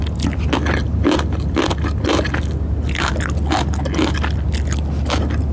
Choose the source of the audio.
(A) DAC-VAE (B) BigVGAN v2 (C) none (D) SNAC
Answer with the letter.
C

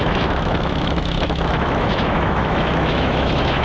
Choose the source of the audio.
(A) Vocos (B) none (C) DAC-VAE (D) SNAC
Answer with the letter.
C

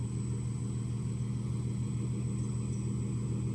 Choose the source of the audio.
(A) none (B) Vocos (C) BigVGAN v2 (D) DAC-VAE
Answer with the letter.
A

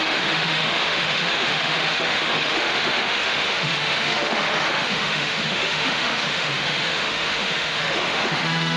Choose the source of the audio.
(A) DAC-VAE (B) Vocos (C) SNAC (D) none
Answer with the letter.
A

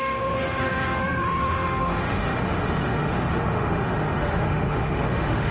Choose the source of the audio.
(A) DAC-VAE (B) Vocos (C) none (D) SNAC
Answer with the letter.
A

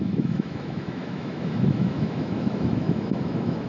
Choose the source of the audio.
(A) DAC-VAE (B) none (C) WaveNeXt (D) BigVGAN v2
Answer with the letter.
A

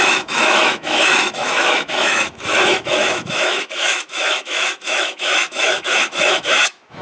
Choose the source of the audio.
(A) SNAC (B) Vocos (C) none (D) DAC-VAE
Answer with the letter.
D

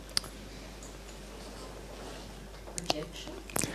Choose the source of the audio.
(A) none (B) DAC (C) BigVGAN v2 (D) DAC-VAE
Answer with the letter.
A